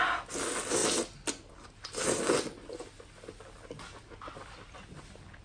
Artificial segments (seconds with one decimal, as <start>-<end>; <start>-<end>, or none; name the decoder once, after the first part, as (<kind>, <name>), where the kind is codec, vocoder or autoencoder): none